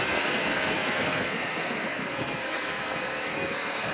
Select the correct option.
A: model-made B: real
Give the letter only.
A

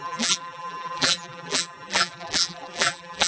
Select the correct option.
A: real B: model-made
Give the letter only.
B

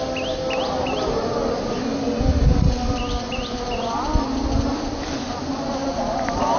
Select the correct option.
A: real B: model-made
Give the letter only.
A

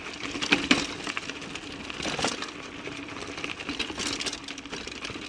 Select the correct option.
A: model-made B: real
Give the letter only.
B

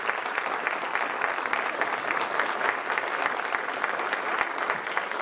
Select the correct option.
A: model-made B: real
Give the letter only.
B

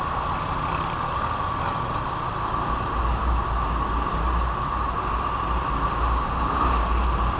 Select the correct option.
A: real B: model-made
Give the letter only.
A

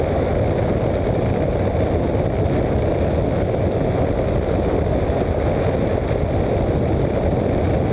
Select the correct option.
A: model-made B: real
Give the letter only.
B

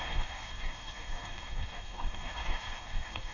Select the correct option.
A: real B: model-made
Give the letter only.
B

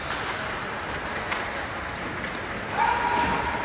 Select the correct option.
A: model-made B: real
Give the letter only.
B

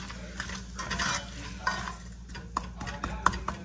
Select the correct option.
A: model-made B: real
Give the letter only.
B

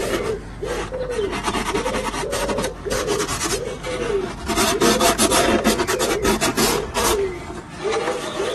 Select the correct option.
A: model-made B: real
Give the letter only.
B